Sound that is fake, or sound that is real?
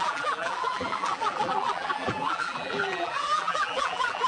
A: fake